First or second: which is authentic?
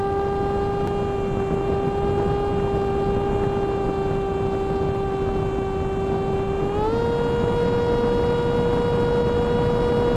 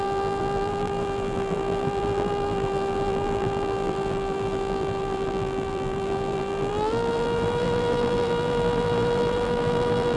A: first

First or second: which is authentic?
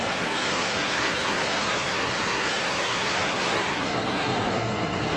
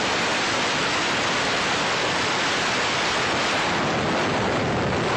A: second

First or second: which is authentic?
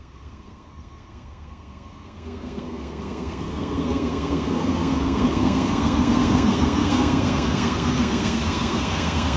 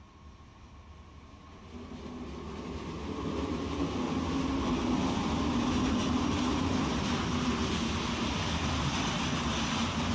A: second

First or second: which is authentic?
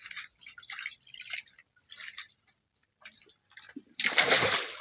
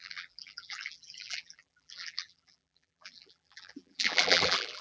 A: first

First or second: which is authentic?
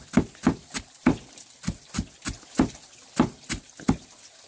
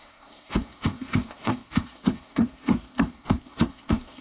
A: first